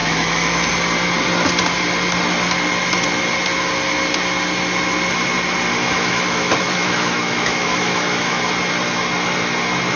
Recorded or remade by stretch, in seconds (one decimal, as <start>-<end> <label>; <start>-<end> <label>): 0.0-0.7 remade; 0.7-5.7 recorded; 5.7-8.4 remade; 8.4-10.0 recorded